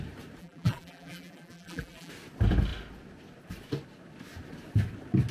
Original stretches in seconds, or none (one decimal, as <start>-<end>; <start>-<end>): 0.0-0.4; 2.1-5.3